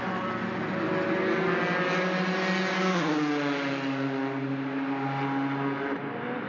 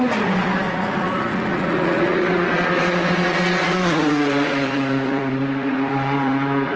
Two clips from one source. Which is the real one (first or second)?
first